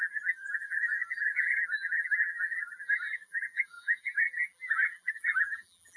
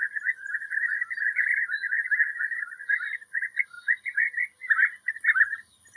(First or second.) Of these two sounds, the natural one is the second